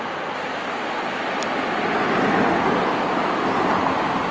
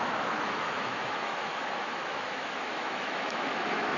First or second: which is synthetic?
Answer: second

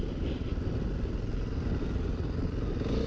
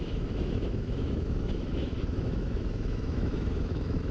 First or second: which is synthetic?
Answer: second